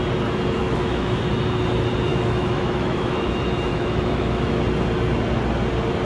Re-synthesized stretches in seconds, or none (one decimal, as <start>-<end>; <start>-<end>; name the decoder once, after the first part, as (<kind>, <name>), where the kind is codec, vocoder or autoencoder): 0.6-1.2 (autoencoder, DAC-VAE); 2.1-3.3; 3.7-4.6